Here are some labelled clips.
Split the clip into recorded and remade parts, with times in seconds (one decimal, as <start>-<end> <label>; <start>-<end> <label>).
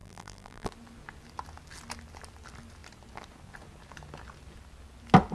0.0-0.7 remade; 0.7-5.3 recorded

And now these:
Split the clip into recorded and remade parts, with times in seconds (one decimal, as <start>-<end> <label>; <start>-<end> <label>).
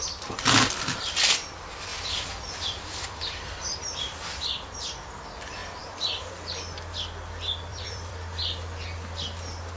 0.0-1.9 recorded; 1.9-4.8 remade; 4.8-5.6 recorded; 5.6-6.3 remade; 6.3-7.7 recorded; 7.7-8.4 remade; 8.4-9.8 recorded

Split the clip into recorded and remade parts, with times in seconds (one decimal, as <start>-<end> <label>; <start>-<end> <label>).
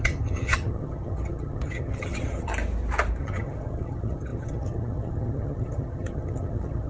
0.0-2.5 remade; 2.5-3.2 recorded; 3.2-6.9 remade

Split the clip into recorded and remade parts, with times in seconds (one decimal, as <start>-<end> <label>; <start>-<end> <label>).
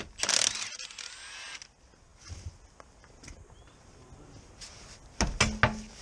0.0-6.0 recorded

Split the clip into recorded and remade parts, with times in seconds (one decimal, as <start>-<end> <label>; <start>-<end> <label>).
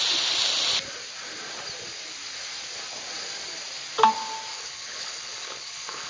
0.0-4.5 recorded; 4.5-6.1 remade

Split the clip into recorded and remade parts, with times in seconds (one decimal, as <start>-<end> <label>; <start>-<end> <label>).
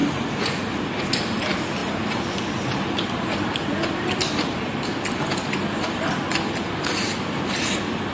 0.0-1.1 recorded; 1.1-8.1 remade